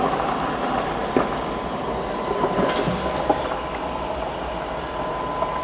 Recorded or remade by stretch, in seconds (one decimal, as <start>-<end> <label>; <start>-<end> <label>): 0.0-5.6 recorded